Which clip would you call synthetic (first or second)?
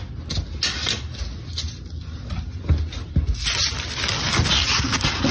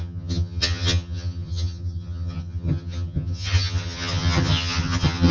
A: second